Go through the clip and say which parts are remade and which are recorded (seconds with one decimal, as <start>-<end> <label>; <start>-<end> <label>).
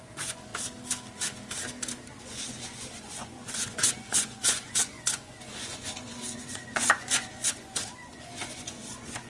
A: 0.0-0.5 remade; 0.5-2.2 recorded; 2.2-9.3 remade